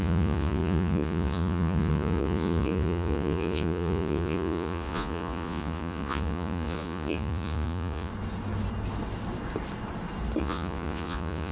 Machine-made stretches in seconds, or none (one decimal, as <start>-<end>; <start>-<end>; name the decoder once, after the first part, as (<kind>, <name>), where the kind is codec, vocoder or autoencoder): 0.0-8.1 (vocoder, Vocos); 10.4-11.5

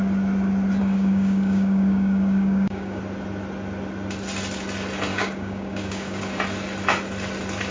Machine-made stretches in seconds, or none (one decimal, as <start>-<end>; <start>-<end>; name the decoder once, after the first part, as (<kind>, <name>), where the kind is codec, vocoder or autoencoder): 0.8-3.0 (codec, DAC); 5.1-6.2